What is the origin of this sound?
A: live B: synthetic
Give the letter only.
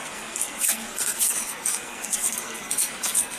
B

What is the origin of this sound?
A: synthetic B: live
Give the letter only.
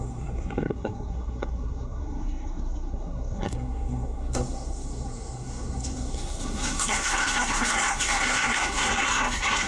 A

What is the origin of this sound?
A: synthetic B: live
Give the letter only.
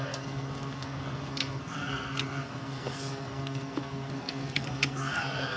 A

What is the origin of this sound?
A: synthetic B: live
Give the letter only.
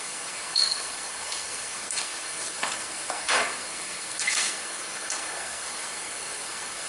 A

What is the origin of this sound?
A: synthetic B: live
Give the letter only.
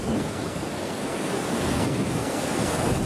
A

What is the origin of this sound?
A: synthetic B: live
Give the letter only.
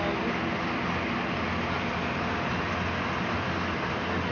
B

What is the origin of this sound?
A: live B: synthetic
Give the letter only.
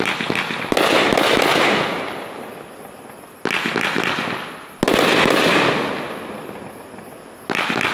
A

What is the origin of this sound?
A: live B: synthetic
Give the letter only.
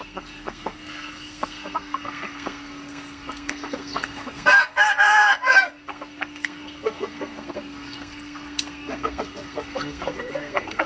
B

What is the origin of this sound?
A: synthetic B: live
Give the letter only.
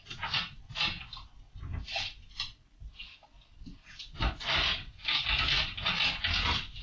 B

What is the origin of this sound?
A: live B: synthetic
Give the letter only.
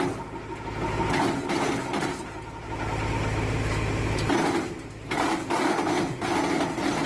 A